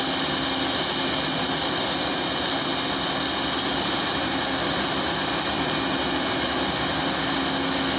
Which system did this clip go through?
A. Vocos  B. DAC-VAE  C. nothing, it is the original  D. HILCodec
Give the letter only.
C